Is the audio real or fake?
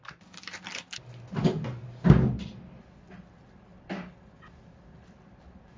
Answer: real